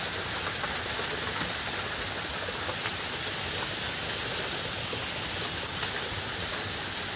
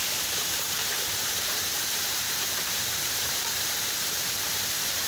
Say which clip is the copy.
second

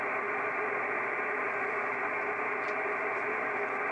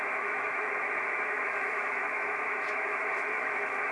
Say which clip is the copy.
second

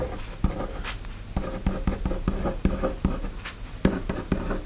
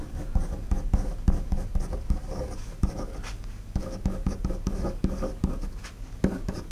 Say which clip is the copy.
second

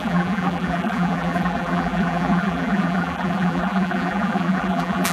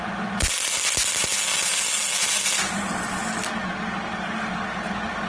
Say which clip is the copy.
first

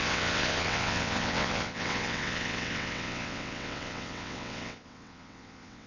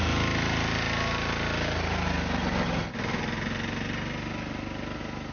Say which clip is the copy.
first